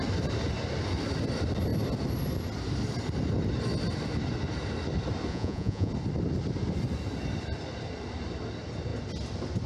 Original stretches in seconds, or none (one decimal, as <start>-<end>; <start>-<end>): 0.0-5.3; 5.9-9.7